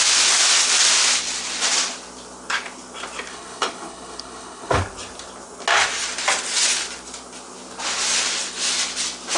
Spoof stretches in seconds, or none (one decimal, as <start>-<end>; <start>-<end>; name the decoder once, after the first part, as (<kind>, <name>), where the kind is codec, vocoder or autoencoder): 3.3-4.8 (codec, HILCodec)